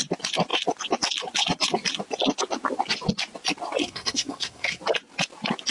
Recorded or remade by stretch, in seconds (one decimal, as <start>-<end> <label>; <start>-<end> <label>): 0.0-3.8 recorded; 3.8-4.8 remade; 4.8-5.7 recorded